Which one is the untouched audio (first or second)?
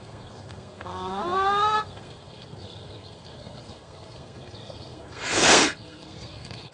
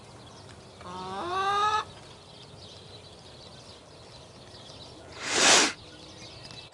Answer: second